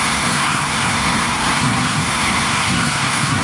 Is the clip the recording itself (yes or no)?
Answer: no